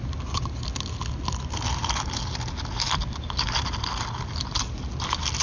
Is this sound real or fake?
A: real